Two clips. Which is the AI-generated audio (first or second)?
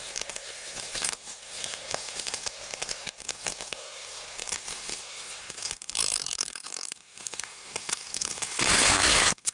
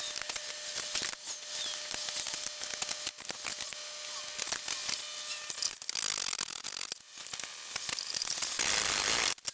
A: first